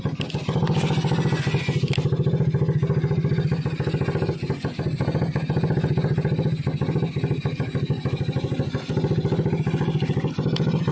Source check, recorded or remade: recorded